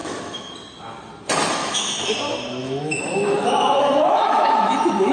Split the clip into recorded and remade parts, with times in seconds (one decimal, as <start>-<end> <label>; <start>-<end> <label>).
0.0-0.5 remade; 0.5-1.6 recorded; 1.6-2.1 remade; 2.1-2.6 recorded; 2.6-5.1 remade